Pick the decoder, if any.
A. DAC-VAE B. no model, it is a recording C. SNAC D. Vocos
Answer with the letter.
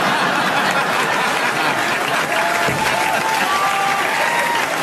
B